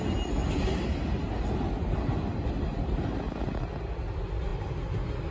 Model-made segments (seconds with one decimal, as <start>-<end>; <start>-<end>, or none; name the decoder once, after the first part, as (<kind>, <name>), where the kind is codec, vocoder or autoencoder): none